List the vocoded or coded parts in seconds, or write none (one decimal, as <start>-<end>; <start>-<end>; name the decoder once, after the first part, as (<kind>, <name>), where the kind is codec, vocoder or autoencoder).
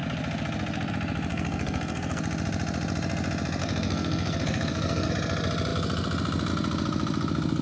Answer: 1.3-2.2 (codec, SNAC); 3.6-5.1